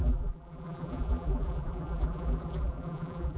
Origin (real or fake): fake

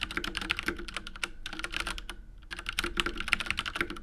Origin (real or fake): real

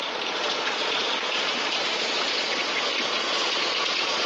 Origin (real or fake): fake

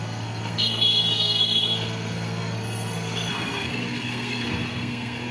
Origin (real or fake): fake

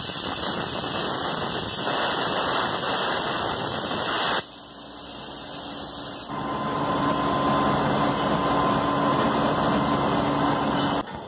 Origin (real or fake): real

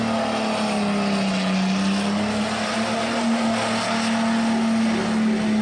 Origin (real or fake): real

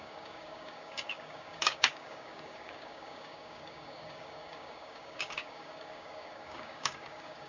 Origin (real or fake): fake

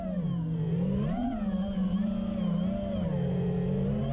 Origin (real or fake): real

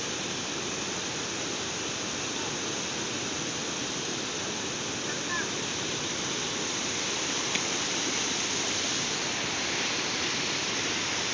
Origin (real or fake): fake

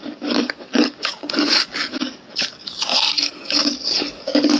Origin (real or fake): fake